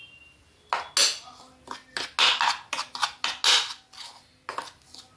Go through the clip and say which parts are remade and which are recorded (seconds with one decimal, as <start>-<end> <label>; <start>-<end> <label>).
0.0-5.2 recorded